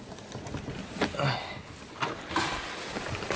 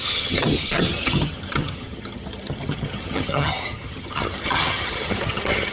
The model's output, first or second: second